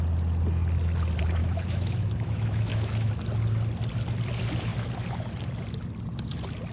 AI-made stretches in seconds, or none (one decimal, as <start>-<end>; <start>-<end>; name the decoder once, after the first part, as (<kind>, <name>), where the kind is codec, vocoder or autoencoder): 1.4-3.1 (autoencoder, DAC-VAE)